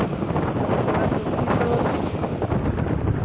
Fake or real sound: real